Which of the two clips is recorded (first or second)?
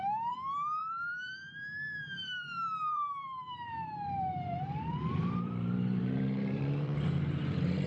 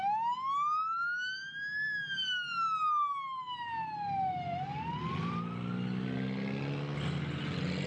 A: second